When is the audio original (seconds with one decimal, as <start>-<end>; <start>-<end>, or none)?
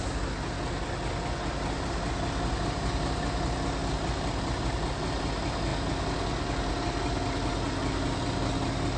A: 0.0-9.0